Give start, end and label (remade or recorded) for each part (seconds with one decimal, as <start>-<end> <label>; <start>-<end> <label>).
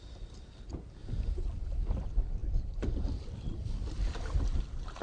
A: 0.0-1.0 recorded; 1.0-1.6 remade; 1.6-2.4 recorded; 2.4-5.0 remade